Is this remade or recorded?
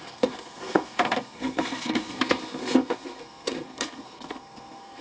remade